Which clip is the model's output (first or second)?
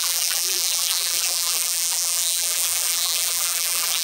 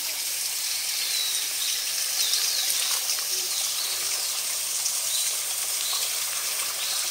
first